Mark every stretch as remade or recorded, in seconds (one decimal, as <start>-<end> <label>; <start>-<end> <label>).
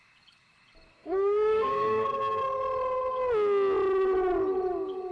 0.0-0.9 recorded; 0.9-2.2 remade; 2.2-5.1 recorded